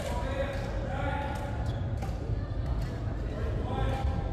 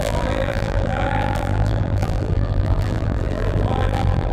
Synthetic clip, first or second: second